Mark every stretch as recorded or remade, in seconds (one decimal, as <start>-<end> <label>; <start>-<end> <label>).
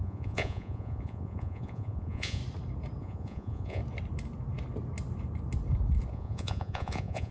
0.0-2.4 remade; 2.4-3.0 recorded; 3.0-3.8 remade; 3.8-6.1 recorded; 6.1-7.3 remade